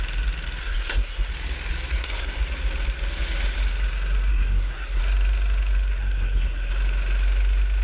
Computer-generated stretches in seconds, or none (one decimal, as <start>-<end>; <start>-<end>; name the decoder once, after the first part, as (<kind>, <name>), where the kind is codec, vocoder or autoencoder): 0.6-1.3 (codec, SNAC); 1.9-2.4; 4.3-5.0; 6.0-6.7